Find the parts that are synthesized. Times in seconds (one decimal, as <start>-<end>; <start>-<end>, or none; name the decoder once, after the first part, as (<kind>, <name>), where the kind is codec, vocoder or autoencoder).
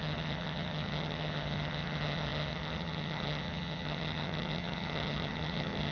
0.0-5.9 (vocoder, HiFi-GAN)